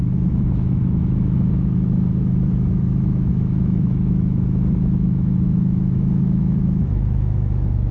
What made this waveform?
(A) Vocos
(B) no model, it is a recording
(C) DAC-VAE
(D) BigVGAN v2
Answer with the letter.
C